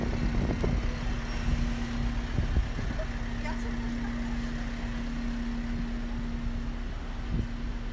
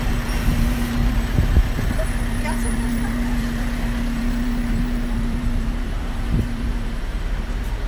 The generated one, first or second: second